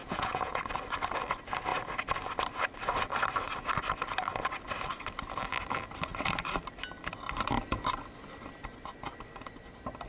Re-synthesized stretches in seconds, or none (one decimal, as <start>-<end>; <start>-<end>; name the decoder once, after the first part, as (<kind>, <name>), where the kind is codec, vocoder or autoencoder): 0.0-0.6 (vocoder, Vocos)